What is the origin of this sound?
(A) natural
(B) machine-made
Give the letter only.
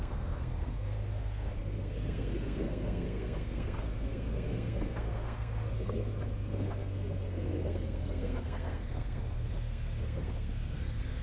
B